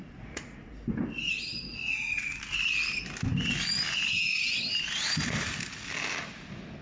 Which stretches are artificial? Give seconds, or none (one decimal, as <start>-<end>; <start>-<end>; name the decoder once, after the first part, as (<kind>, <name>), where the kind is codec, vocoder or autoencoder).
0.0-0.7 (vocoder, Vocos); 1.8-2.4